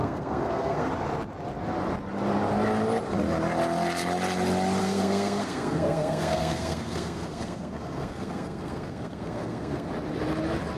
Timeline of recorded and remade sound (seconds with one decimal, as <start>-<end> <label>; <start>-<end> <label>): 0.0-0.9 remade; 0.9-4.8 recorded; 4.8-9.9 remade; 9.9-10.8 recorded